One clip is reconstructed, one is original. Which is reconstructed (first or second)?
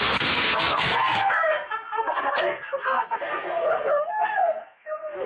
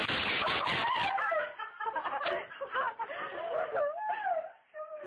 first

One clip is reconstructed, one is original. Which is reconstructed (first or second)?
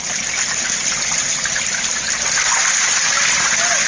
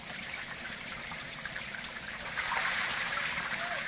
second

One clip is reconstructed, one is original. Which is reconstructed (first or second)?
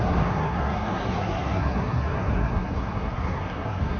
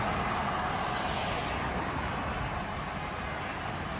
first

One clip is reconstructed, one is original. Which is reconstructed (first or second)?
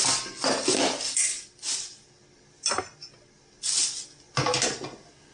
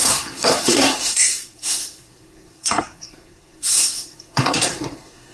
second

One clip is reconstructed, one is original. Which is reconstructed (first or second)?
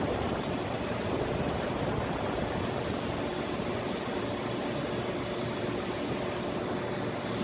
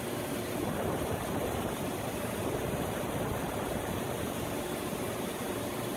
second